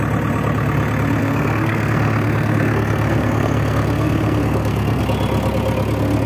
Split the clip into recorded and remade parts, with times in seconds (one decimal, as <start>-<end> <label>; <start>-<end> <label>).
0.0-1.2 recorded; 1.2-5.0 remade; 5.0-6.3 recorded